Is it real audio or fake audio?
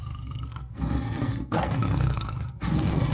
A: fake